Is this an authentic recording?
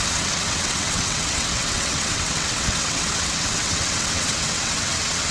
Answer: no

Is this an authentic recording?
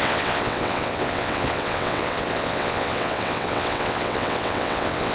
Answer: no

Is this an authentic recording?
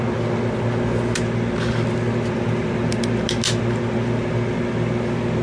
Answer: yes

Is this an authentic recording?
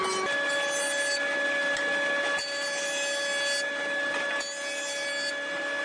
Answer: yes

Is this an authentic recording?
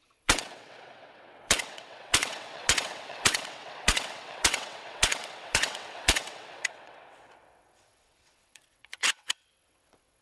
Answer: no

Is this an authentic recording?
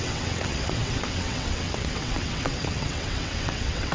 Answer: no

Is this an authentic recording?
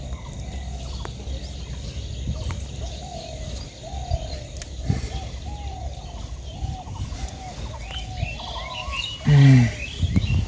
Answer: yes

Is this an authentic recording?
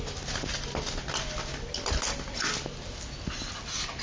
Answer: yes